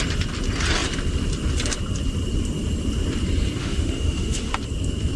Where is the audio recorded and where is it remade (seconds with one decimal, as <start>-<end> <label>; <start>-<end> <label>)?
0.0-3.6 recorded; 3.6-4.5 remade; 4.5-5.2 recorded